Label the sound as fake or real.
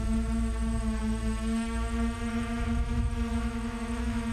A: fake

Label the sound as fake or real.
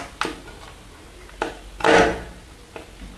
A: real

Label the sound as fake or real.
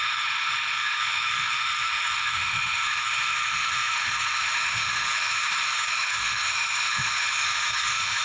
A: fake